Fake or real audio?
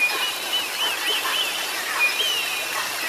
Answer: real